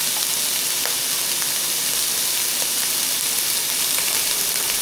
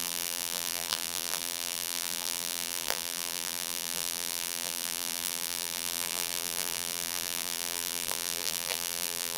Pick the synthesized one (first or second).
second